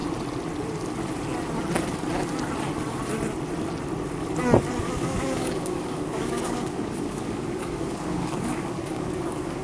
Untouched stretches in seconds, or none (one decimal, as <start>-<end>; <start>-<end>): 0.0-4.8